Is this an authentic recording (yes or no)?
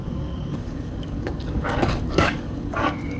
no